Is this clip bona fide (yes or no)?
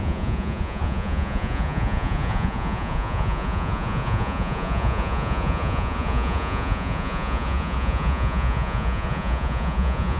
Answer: no